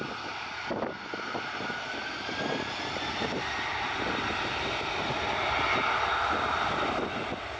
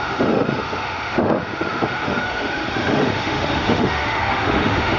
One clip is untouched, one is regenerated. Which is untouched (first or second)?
first